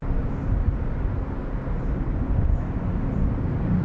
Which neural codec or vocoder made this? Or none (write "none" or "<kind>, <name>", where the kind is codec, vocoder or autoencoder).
none